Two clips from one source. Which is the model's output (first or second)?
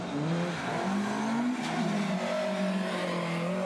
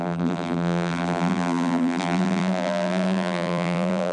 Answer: second